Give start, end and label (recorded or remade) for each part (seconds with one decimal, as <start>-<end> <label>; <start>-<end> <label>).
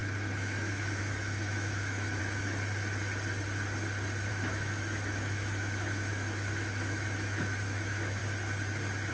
0.0-2.2 remade; 2.2-4.3 recorded; 4.3-8.2 remade; 8.2-9.1 recorded